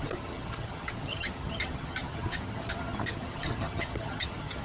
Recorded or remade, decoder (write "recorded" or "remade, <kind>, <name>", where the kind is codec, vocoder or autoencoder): remade, vocoder, HiFi-GAN